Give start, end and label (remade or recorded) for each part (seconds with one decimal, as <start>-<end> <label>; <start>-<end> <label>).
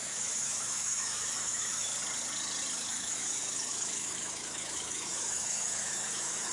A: 0.0-1.9 remade; 1.9-2.9 recorded; 2.9-6.5 remade